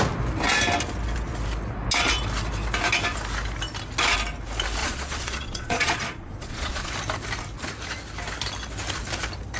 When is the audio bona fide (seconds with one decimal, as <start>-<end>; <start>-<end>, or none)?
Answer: 0.0-4.8; 6.9-9.6